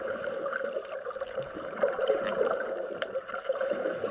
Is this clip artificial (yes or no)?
yes